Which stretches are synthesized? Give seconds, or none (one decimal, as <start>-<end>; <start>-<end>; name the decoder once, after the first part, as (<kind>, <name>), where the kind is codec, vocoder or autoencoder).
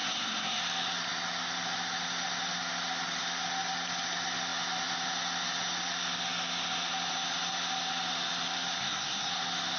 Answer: 0.0-0.6 (codec, SNAC); 8.8-9.3